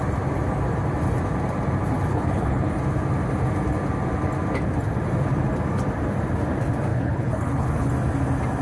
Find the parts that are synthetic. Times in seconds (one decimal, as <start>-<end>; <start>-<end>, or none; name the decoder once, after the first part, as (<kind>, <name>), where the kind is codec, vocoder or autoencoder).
2.1-2.7 (codec, HILCodec); 6.9-7.9